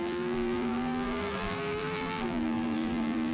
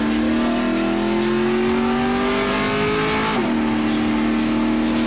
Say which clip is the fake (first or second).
first